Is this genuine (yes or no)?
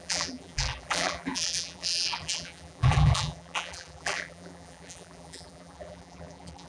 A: no